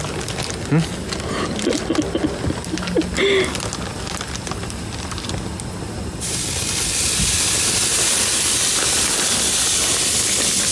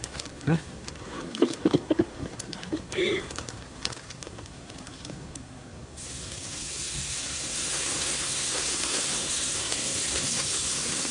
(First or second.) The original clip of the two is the first